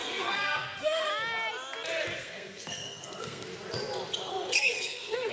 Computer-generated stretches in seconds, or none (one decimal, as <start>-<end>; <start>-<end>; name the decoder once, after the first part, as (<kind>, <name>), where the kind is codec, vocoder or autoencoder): 0.0-1.1 (codec, SNAC); 2.2-3.5; 4.3-5.3